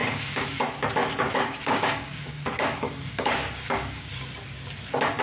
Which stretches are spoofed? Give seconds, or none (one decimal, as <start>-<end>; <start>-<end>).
0.0-0.6; 1.0-4.1